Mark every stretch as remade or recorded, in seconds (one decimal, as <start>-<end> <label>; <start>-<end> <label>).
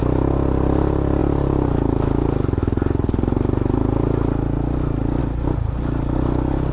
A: 0.0-6.7 recorded